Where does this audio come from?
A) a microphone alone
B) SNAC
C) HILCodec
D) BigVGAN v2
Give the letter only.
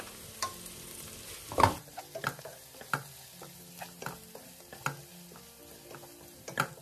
A